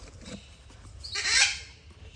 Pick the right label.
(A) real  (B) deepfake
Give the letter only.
B